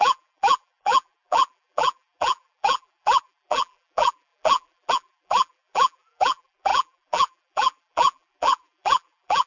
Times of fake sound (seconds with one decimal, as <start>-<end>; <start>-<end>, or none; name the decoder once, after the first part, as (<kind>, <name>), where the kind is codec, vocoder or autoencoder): 0.0-9.5 (vocoder, BigVGAN v2)